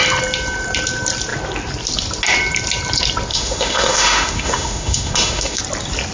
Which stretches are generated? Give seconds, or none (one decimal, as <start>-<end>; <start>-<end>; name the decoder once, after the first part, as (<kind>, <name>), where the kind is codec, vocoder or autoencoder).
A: 3.3-5.6 (autoencoder, DAC-VAE)